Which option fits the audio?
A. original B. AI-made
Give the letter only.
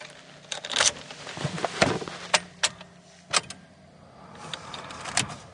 A